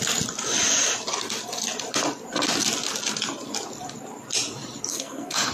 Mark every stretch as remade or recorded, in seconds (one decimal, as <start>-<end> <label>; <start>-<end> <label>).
0.0-4.9 recorded; 4.9-5.5 remade